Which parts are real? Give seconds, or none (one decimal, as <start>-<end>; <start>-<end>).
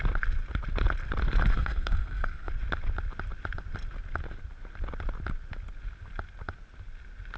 0.0-1.5; 2.5-7.4